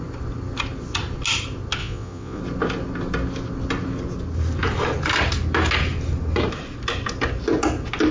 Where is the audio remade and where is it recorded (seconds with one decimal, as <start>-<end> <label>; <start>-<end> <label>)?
0.0-1.8 recorded; 1.8-2.4 remade; 2.4-8.1 recorded